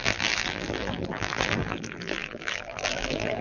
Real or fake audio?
fake